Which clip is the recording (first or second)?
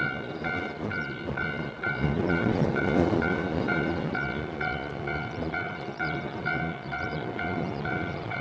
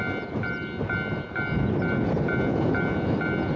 second